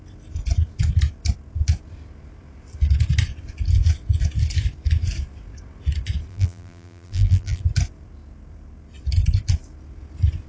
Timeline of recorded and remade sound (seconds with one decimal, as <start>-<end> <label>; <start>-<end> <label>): 0.0-6.3 recorded; 6.3-7.6 remade; 7.6-10.5 recorded